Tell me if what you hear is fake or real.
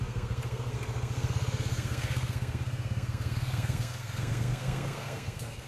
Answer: fake